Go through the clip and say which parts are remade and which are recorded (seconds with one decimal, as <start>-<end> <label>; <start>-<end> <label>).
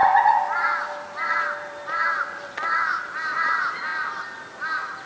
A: 0.0-5.1 recorded